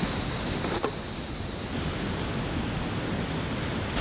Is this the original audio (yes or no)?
yes